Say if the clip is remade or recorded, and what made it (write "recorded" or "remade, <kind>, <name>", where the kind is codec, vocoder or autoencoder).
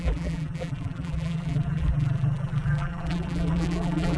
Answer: remade, vocoder, BigVGAN v2